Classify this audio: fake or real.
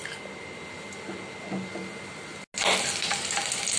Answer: real